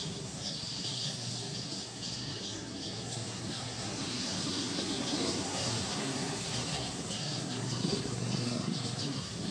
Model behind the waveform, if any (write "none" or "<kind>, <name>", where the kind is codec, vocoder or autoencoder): codec, SNAC